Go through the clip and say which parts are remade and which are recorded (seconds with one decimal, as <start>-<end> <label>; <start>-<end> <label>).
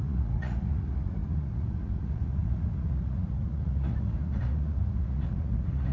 0.0-5.9 remade